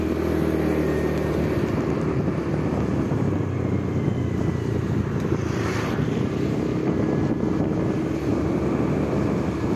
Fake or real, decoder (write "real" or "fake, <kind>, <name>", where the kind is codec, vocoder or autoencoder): real